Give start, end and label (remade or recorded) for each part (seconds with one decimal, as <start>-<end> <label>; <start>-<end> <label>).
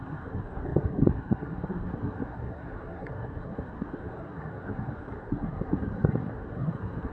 0.0-7.1 remade